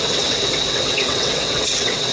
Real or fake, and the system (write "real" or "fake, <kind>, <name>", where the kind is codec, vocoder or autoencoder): fake, vocoder, WaveNeXt